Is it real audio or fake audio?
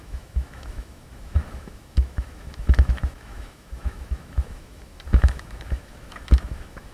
fake